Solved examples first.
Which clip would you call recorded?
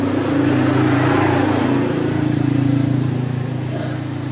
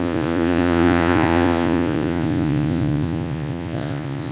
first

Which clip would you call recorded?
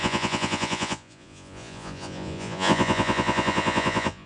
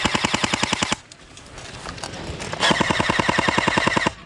second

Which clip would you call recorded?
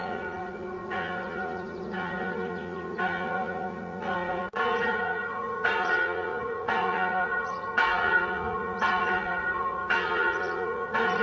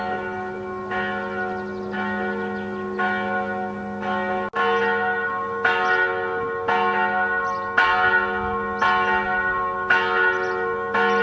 second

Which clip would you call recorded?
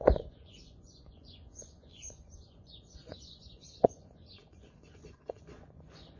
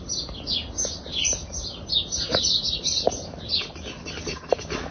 second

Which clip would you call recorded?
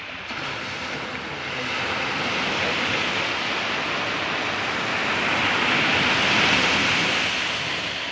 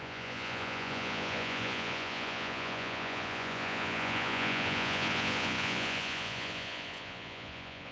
first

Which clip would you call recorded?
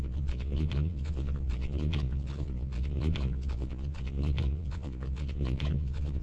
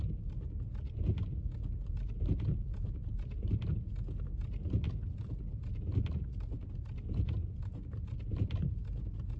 second